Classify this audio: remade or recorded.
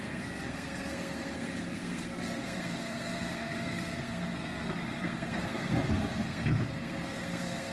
remade